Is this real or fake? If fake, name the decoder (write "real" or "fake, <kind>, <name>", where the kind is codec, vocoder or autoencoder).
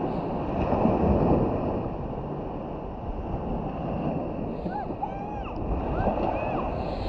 real